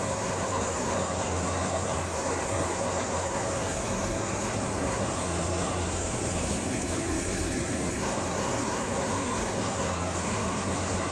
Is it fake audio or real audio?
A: fake